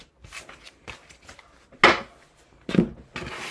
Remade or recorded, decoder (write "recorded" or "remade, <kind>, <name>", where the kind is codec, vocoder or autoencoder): recorded